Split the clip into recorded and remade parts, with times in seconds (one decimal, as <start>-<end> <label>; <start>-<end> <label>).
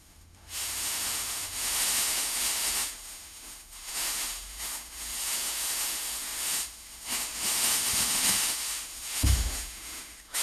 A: 0.0-10.4 remade